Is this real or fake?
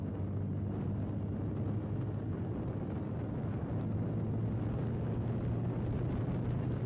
real